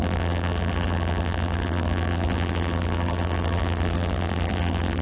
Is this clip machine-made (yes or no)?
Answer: yes